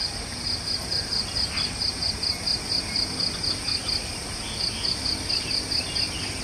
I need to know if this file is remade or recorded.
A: recorded